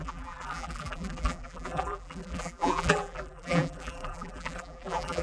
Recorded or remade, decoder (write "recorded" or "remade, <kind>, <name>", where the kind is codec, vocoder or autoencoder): remade, vocoder, BigVGAN v2